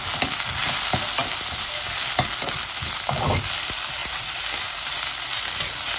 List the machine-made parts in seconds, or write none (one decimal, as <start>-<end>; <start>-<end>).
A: 4.0-4.9